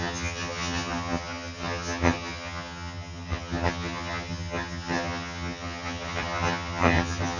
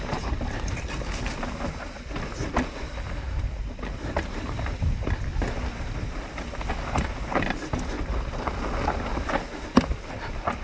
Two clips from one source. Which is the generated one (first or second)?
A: first